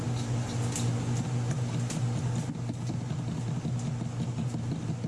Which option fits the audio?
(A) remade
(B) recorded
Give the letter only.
B